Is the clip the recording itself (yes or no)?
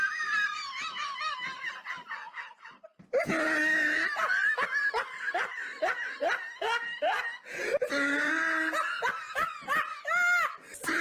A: yes